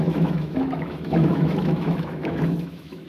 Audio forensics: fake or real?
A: fake